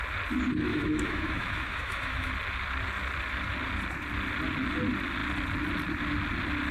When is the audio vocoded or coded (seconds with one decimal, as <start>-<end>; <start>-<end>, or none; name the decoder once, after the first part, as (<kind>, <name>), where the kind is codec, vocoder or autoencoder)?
0.7-2.3 (autoencoder, DAC-VAE)